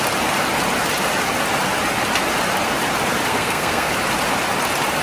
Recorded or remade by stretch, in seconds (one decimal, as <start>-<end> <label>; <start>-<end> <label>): 0.0-3.3 recorded; 3.3-3.9 remade; 3.9-5.0 recorded